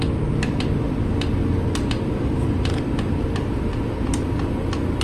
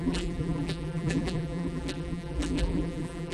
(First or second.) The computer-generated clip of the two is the second